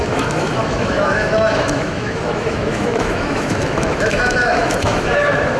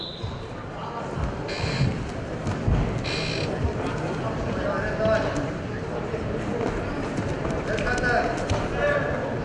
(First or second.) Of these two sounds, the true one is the second